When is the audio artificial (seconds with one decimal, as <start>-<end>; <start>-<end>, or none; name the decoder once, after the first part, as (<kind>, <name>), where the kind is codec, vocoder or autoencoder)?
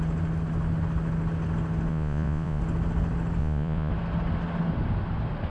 1.9-2.6 (vocoder, Vocos); 3.4-3.9